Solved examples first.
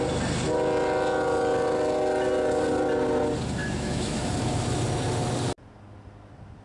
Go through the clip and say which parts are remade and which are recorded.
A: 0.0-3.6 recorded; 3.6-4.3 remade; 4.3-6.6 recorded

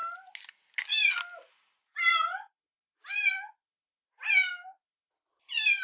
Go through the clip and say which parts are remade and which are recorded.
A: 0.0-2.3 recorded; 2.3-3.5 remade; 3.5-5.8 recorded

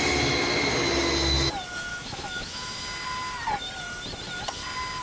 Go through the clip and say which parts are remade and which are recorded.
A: 0.0-1.9 recorded; 1.9-2.8 remade; 2.8-5.0 recorded